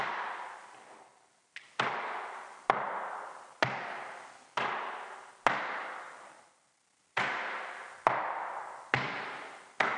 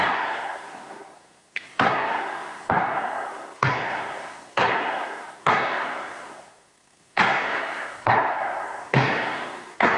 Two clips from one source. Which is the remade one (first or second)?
second